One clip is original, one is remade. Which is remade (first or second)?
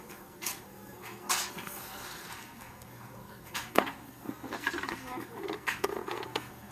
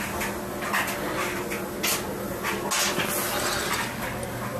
first